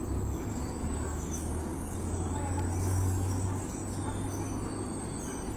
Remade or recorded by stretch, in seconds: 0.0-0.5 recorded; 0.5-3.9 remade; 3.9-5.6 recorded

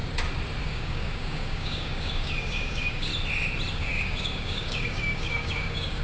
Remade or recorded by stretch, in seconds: 0.0-0.6 recorded; 0.6-3.1 remade; 3.1-3.7 recorded; 3.7-6.0 remade